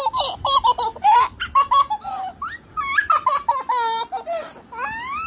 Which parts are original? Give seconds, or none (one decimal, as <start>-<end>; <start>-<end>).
0.0-5.3